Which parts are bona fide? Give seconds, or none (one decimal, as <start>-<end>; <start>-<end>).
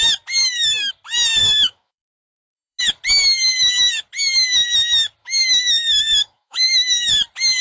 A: 0.0-0.4; 0.9-1.4; 2.8-5.2; 7.1-7.6